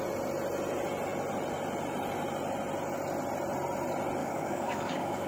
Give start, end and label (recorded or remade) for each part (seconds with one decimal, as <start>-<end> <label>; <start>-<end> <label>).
0.0-4.2 recorded; 4.2-5.3 remade